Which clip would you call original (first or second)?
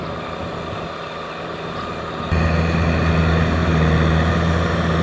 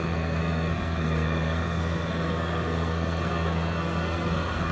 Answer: first